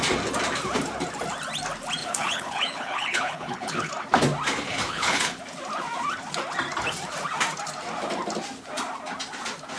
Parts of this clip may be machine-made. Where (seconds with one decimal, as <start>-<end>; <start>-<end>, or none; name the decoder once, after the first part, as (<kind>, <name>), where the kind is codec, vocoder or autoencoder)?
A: 2.0-3.9 (codec, HILCodec); 4.7-5.4